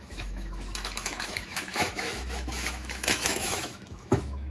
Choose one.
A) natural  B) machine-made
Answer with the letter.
B